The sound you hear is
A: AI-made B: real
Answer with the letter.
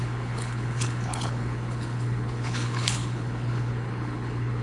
A